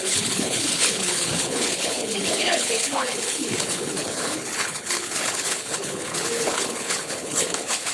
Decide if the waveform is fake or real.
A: fake